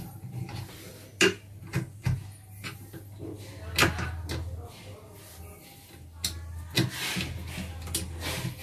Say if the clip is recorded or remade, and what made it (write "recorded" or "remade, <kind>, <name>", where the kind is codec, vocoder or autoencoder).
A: recorded